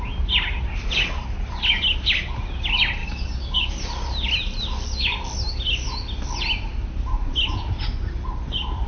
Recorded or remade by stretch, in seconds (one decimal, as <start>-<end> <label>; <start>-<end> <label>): 0.0-3.0 recorded; 3.0-3.7 remade; 3.7-8.9 recorded